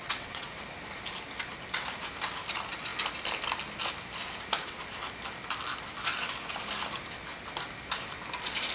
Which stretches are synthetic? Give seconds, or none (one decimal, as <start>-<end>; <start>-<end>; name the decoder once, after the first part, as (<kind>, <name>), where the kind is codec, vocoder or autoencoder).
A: 0.0-0.6 (vocoder, WaveNeXt)